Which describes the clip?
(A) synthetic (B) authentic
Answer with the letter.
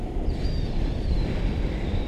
B